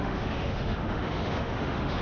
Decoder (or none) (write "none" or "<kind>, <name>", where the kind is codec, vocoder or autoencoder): autoencoder, DAC-VAE